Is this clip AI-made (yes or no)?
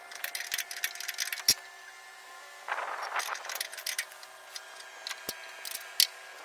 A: no